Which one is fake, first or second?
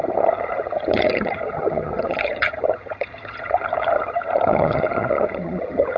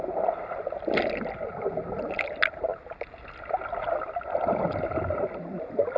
first